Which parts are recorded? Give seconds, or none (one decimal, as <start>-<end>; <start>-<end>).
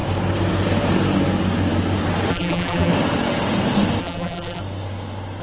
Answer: 0.0-2.3; 2.9-4.0; 4.6-5.4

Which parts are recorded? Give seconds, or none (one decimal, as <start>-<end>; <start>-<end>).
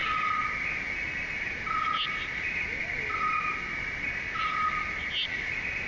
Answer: 0.0-5.9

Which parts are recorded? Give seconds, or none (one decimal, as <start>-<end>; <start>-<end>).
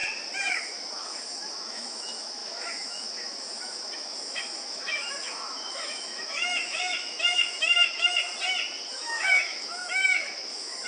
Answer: 0.0-0.5; 8.2-8.9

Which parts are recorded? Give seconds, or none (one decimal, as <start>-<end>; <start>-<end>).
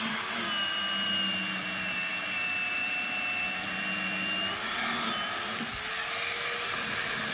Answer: 0.0-7.3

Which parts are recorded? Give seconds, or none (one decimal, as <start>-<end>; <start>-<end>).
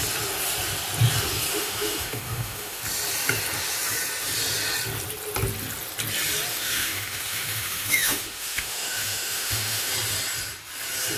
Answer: 0.0-1.5; 2.8-6.5; 9.9-11.2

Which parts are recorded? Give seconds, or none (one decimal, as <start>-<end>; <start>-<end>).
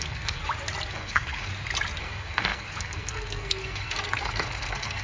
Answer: 0.4-0.9; 1.5-2.0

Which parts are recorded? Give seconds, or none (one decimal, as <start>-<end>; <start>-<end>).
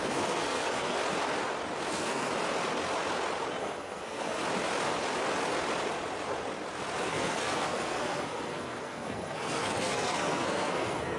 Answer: 1.0-1.9; 2.3-3.6; 4.4-7.0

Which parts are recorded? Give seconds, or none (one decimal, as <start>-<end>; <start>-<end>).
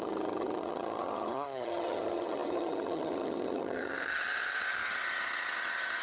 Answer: none